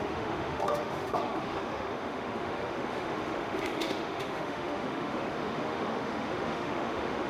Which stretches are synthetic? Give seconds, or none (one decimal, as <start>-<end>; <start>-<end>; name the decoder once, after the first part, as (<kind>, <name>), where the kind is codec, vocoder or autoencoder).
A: 0.0-7.3 (autoencoder, DAC-VAE)